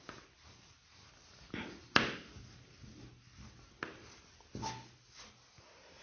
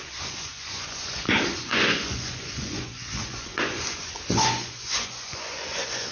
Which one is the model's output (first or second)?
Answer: second